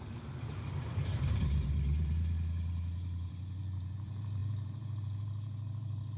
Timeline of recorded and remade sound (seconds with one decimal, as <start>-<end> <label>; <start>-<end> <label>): 0.0-6.2 remade

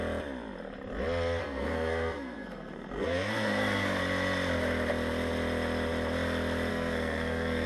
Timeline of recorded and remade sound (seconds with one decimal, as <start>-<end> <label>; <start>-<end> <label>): 0.0-1.4 recorded; 1.4-4.0 remade; 4.0-6.7 recorded; 6.7-7.7 remade

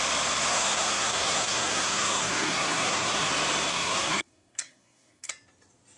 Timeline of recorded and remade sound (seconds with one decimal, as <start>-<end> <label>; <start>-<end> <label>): 0.0-0.5 recorded; 0.5-3.3 remade; 3.3-3.7 recorded; 3.7-5.3 remade; 5.3-6.0 recorded